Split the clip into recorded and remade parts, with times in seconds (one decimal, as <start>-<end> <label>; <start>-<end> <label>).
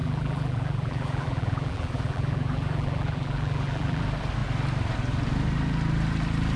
0.0-4.0 remade; 4.0-6.6 recorded